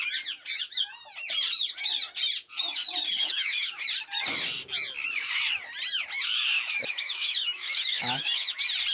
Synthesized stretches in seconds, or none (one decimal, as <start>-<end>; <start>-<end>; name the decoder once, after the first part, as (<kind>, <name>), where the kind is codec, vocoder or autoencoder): 3.2-3.8 (autoencoder, DAC-VAE); 6.8-8.5